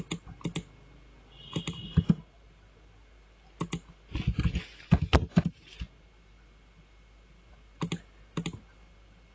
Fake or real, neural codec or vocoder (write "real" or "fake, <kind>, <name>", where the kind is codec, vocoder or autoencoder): real